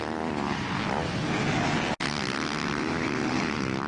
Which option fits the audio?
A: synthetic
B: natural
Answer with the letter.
B